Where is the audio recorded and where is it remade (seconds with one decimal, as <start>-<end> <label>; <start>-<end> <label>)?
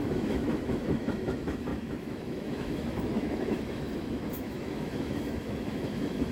0.0-6.3 remade